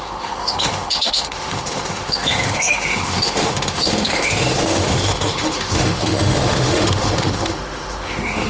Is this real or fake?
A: fake